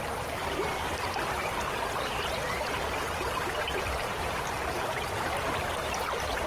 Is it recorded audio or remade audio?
recorded